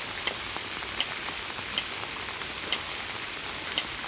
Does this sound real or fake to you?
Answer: real